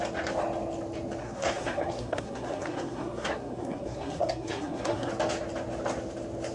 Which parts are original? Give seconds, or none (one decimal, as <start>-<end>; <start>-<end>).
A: 0.0-1.2; 5.1-6.5